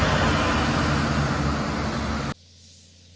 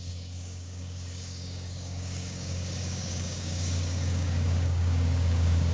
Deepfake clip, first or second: second